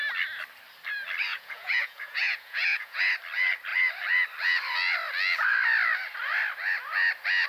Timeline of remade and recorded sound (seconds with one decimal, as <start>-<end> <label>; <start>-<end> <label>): 0.0-1.3 recorded; 1.3-3.0 remade; 3.0-7.5 recorded